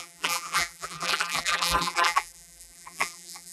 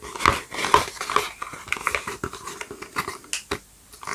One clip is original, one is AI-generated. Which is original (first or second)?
second